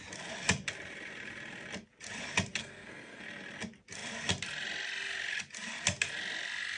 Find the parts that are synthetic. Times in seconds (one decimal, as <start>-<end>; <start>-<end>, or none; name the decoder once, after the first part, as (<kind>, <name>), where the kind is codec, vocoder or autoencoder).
2.6-3.2 (codec, SNAC)